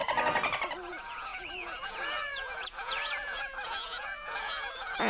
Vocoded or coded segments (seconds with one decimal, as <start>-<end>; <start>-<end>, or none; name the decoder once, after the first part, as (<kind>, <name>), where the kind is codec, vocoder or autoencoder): 0.9-5.1 (vocoder, Vocos)